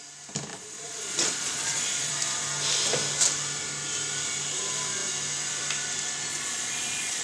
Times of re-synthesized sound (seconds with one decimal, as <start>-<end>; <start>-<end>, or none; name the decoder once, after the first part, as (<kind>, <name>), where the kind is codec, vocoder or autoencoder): 0.5-2.1 (vocoder, Vocos); 6.3-7.2